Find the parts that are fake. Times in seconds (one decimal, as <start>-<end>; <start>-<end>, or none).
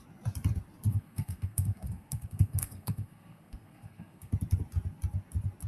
0.9-4.3